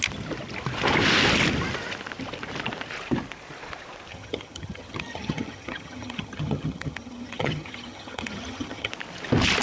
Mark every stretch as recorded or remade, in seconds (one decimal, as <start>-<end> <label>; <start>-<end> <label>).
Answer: 0.0-4.1 recorded; 4.1-8.9 remade; 8.9-9.6 recorded